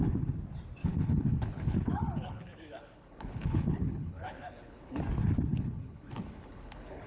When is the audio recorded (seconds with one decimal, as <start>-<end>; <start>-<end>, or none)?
0.0-0.8; 5.0-5.5